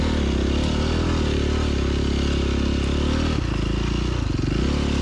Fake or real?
real